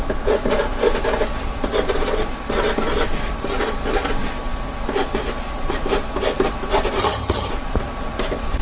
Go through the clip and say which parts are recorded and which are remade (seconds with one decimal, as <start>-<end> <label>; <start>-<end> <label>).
0.0-7.0 recorded; 7.0-7.5 remade; 7.5-8.6 recorded